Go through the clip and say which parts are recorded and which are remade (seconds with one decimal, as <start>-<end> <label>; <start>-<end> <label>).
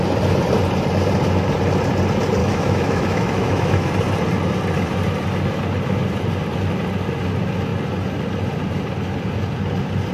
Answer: 0.0-2.4 recorded; 2.4-3.9 remade; 3.9-10.1 recorded